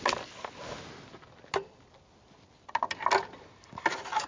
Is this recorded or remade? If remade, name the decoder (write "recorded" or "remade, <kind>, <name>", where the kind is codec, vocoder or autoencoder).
recorded